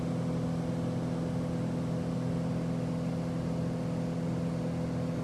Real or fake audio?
real